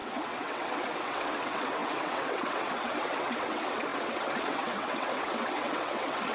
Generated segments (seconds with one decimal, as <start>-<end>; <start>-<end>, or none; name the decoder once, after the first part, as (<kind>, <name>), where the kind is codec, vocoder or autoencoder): 0.0-6.3 (vocoder, WaveNeXt)